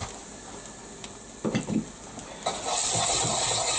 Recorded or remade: recorded